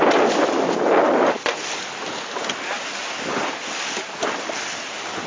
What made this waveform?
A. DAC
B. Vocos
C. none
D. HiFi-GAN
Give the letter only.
C